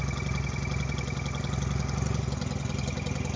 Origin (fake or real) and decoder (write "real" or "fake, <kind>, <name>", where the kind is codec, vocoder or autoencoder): real